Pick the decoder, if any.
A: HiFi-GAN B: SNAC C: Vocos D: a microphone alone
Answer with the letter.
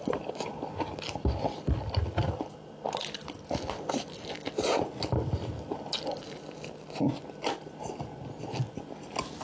D